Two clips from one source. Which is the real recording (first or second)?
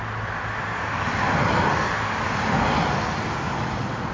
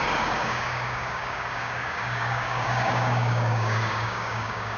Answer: first